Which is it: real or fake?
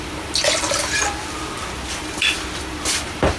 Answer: real